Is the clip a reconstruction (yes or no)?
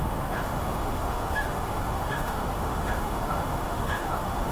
yes